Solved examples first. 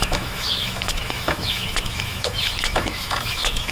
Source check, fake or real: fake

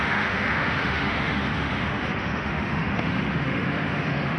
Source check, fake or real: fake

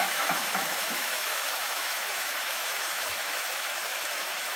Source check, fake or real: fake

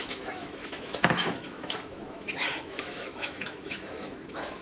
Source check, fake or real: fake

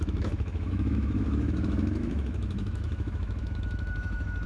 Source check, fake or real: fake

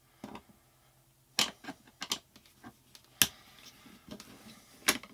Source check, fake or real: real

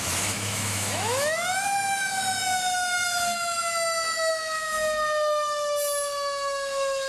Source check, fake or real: fake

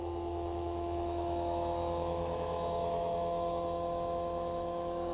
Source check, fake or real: fake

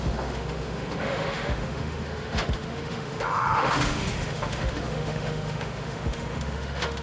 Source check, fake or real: fake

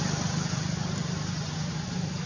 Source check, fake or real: real